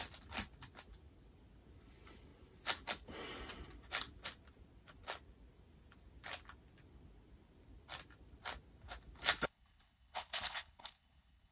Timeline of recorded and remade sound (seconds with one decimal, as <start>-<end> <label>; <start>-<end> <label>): 0.0-9.4 recorded; 9.4-11.5 remade